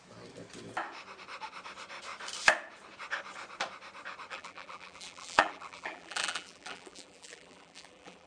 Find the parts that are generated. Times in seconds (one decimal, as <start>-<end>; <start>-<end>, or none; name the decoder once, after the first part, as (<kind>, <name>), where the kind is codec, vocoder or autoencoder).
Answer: 4.3-8.3 (vocoder, BigVGAN v2)